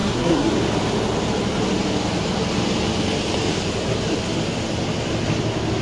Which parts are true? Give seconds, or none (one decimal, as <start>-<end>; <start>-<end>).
0.5-5.8